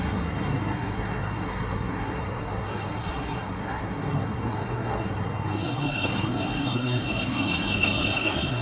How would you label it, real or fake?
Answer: fake